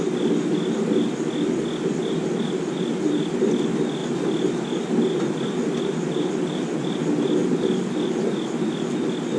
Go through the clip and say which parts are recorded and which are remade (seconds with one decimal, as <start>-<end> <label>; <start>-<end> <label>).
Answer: 0.0-9.4 recorded

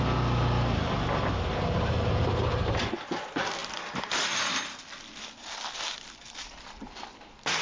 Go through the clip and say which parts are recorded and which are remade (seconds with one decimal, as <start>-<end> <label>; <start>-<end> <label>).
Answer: 0.0-7.6 recorded